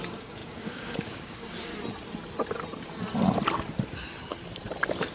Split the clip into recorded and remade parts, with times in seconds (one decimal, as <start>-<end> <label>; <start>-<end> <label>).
0.0-1.7 remade; 1.7-5.1 recorded